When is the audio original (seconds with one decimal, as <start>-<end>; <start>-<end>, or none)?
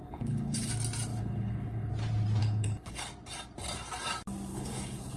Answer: 0.7-1.1; 1.9-2.4; 3.0-4.5